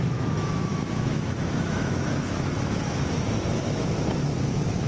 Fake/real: fake